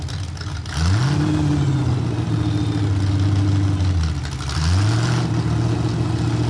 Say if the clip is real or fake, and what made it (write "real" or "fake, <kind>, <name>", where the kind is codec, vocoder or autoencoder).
real